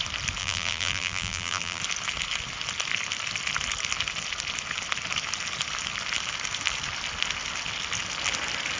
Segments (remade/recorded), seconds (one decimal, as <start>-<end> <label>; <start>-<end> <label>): 0.0-0.4 recorded; 0.4-1.8 remade; 1.8-8.8 recorded